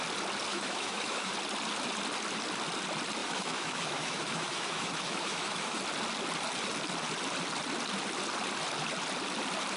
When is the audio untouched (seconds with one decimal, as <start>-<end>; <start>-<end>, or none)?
0.0-0.5; 1.3-3.2; 5.8-9.8